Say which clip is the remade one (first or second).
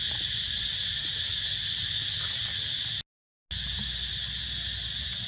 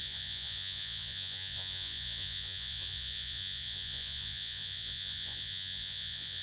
second